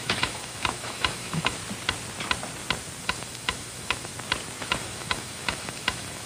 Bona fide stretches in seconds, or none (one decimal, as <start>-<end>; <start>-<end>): 1.6-3.0; 4.1-4.6